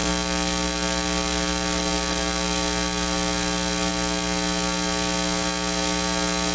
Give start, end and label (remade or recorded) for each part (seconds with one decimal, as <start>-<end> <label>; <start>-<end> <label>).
0.0-6.5 recorded